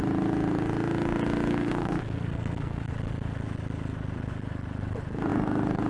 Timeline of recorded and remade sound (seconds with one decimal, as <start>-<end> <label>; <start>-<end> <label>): 0.0-1.5 recorded; 1.5-2.9 remade; 2.9-5.9 recorded